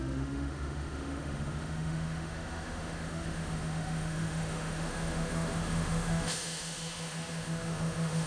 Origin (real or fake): fake